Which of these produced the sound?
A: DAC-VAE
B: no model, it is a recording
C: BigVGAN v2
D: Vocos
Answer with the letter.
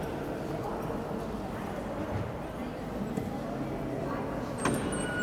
B